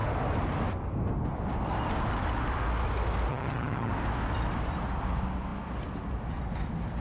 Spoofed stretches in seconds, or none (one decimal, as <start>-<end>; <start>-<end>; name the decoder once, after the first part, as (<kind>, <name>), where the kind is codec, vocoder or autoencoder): 3.3-3.9 (vocoder, HiFi-GAN)